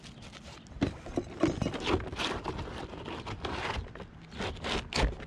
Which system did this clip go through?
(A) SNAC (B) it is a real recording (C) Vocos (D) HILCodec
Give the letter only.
B